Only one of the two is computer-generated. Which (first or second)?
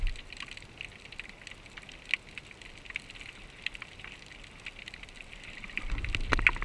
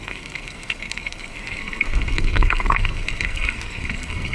second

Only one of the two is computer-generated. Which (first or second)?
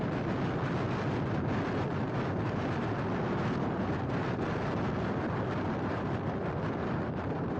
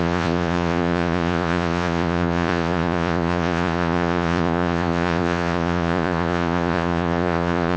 second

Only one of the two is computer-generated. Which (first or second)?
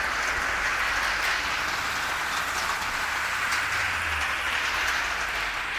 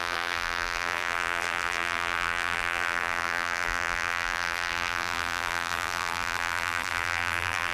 second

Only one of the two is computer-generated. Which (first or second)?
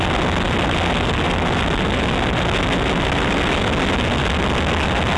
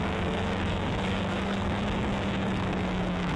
second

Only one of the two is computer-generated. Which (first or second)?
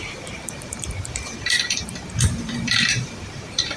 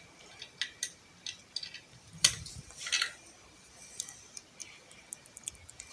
first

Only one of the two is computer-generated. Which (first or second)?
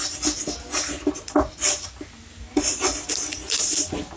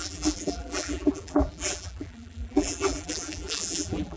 second